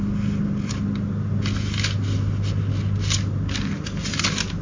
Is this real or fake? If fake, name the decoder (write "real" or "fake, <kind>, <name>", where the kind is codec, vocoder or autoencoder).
real